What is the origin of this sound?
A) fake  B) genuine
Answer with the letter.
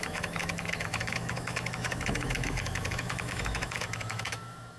A